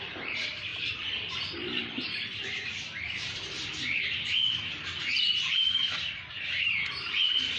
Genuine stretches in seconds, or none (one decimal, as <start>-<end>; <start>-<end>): 0.7-1.8